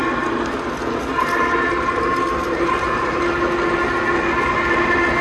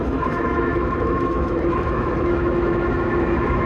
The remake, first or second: second